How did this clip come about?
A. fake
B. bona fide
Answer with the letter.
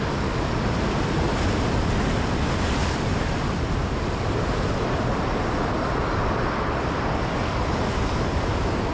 B